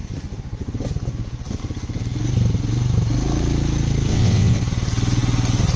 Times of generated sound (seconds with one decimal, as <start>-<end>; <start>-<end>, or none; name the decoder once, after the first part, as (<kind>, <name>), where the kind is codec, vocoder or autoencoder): 4.1-4.6 (vocoder, WaveNeXt)

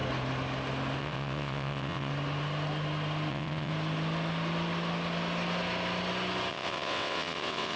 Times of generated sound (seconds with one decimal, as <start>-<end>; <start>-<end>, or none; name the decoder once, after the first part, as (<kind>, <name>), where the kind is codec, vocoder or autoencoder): 1.0-2.1 (vocoder, WaveNeXt); 3.3-3.7; 6.5-7.8